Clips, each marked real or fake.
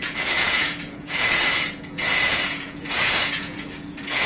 fake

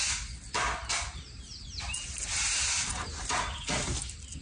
real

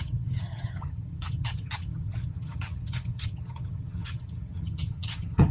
fake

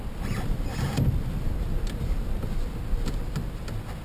real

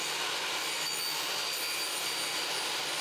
real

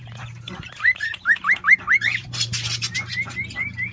fake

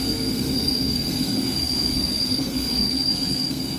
fake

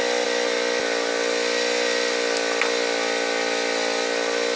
real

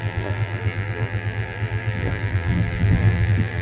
fake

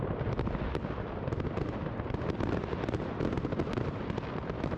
real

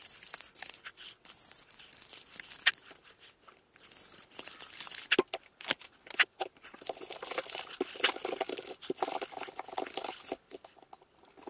real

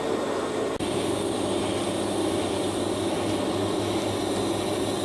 real